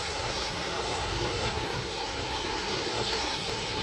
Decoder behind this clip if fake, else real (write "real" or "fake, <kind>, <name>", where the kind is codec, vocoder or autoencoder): fake, codec, SNAC